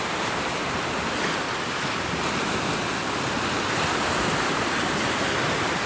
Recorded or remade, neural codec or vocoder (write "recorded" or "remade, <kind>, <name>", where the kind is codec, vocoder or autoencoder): recorded